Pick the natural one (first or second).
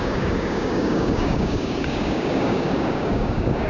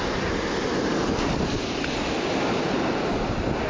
second